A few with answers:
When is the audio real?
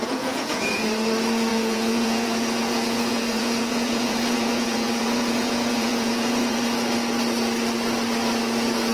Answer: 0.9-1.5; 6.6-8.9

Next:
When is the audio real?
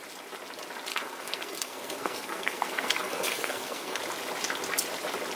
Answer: 0.0-0.9; 4.0-5.4